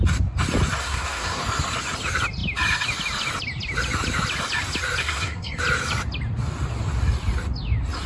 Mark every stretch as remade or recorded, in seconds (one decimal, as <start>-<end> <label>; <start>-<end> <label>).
0.0-0.8 recorded; 0.8-1.4 remade; 1.4-5.0 recorded; 5.0-5.6 remade; 5.6-8.1 recorded